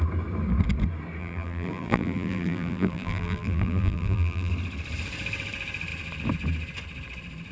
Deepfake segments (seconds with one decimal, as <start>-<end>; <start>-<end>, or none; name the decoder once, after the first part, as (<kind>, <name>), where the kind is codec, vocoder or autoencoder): 1.2-4.5 (vocoder, BigVGAN v2)